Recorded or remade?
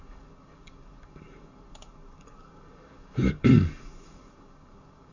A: remade